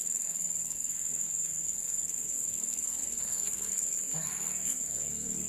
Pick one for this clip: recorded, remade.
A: remade